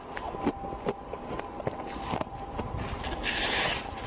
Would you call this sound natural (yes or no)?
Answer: yes